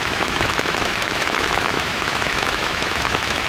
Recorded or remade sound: remade